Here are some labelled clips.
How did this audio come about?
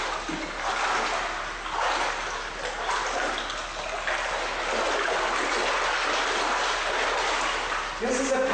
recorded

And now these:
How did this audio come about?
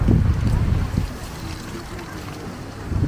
recorded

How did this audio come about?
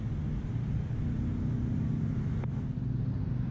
recorded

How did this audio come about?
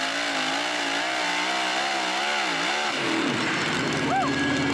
recorded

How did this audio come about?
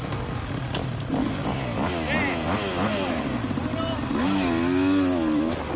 recorded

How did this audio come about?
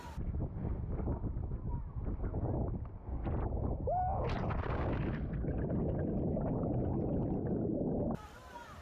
recorded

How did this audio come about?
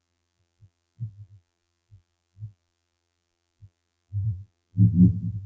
remade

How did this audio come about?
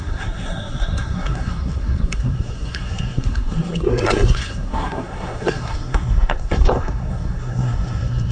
remade